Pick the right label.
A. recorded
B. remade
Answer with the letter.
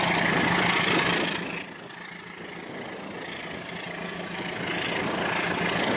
A